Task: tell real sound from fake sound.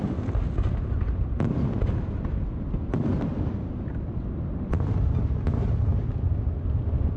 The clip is real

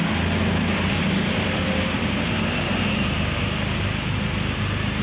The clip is real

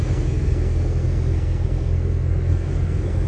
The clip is fake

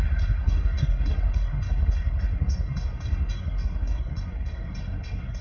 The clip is fake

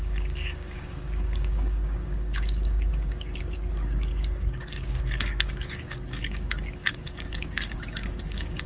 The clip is fake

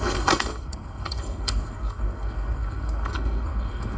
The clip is fake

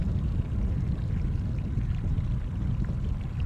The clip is real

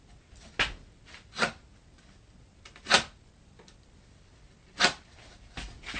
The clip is real